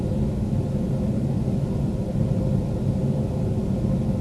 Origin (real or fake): real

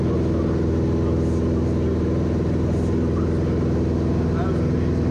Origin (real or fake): real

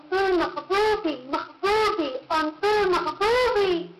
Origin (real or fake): real